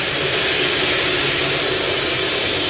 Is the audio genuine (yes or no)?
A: yes